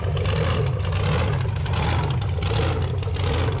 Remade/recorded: recorded